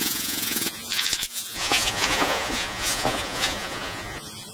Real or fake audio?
fake